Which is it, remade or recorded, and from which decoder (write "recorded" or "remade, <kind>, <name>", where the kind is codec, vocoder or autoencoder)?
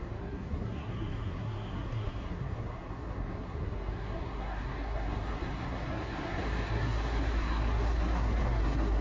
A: remade, codec, SNAC